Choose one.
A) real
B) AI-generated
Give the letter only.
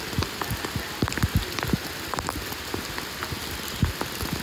A